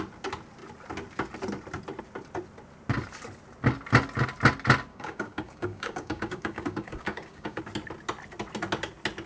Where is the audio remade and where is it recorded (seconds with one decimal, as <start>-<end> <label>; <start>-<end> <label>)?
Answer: 0.0-4.9 recorded; 4.9-7.6 remade; 7.6-9.3 recorded